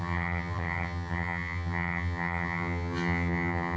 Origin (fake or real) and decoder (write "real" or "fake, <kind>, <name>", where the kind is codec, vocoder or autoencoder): fake, vocoder, HiFi-GAN